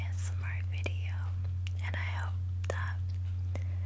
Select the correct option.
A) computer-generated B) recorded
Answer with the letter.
B